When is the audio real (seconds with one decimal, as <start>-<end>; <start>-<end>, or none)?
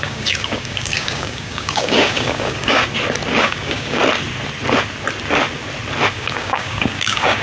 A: 2.8-3.4; 4.0-6.1